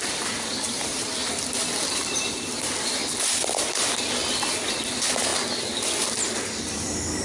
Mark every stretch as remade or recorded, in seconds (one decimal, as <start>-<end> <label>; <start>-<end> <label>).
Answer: 0.0-1.1 remade; 1.1-1.9 recorded; 1.9-3.0 remade; 3.0-4.7 recorded; 4.7-5.3 remade; 5.3-6.6 recorded; 6.6-7.2 remade

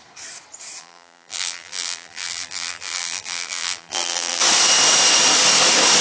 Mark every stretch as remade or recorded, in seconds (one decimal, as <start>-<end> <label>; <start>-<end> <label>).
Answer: 0.0-0.8 recorded; 0.8-4.4 remade; 4.4-6.0 recorded

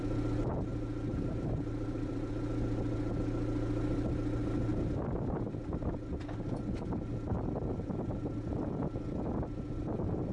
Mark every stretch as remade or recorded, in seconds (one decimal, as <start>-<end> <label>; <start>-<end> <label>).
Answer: 0.0-0.7 recorded; 0.7-2.3 remade; 2.3-10.3 recorded

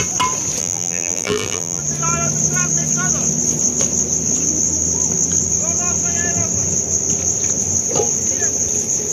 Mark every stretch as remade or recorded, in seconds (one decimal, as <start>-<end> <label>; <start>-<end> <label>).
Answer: 0.0-0.6 recorded; 0.6-1.8 remade; 1.8-9.1 recorded

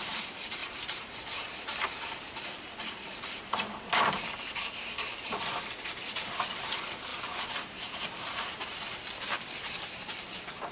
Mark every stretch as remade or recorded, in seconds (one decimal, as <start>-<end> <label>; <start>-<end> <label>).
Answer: 0.0-0.6 recorded; 0.6-5.4 remade; 5.4-7.1 recorded; 7.1-8.8 remade; 8.8-10.7 recorded

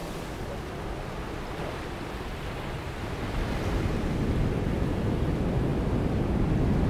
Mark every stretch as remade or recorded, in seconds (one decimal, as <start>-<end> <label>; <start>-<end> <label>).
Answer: 0.0-4.1 remade; 4.1-6.9 recorded

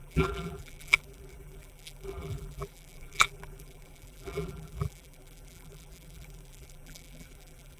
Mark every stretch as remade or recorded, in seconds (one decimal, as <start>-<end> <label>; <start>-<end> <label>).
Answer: 0.0-7.8 remade

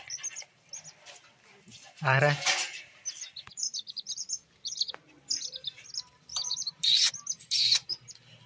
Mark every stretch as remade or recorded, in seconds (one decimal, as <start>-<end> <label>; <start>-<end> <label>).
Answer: 0.0-1.7 recorded; 1.7-3.0 remade; 3.0-3.5 recorded; 3.5-4.9 remade; 4.9-6.3 recorded; 6.3-7.1 remade; 7.1-8.5 recorded